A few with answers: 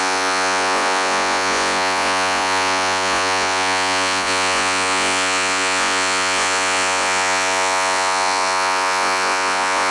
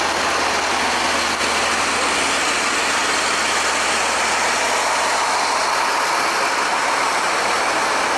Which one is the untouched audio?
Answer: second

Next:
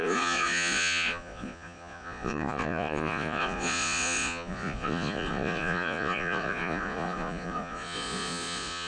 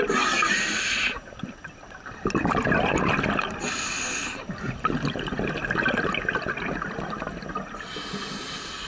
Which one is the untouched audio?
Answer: second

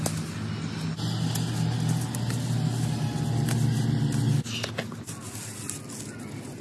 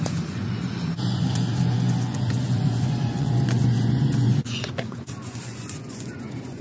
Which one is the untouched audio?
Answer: first